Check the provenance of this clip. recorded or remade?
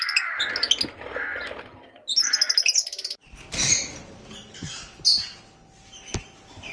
recorded